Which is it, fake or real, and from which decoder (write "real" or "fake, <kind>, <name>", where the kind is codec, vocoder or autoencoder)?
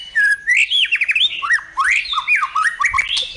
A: real